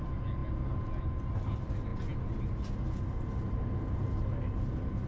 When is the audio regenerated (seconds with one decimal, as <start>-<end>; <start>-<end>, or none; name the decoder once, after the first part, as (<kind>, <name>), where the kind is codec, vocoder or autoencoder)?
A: none